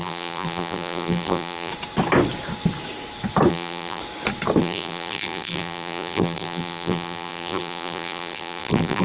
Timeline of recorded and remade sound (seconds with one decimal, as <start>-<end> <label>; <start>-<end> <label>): 0.0-1.7 remade; 1.7-3.5 recorded; 3.5-4.0 remade; 4.0-4.6 recorded; 4.6-9.0 remade